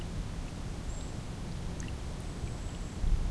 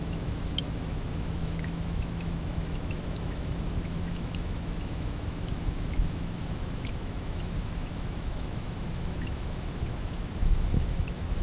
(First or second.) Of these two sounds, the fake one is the second